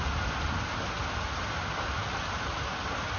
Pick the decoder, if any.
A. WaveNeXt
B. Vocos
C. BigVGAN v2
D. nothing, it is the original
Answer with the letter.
D